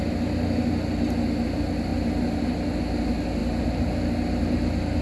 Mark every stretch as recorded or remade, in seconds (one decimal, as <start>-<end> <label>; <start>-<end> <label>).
0.0-5.0 recorded